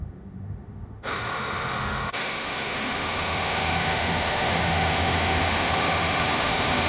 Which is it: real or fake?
fake